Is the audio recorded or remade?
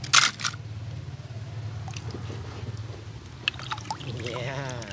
recorded